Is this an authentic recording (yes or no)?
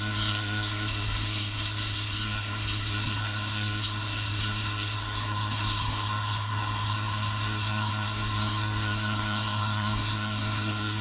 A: no